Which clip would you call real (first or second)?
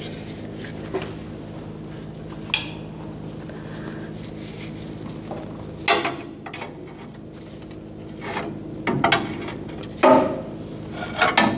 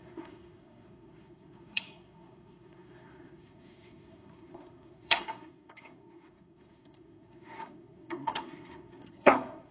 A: first